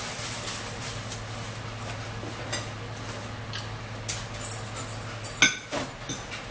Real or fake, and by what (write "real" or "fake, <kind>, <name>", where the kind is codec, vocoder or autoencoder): real